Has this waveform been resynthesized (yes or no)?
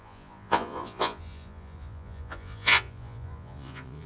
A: yes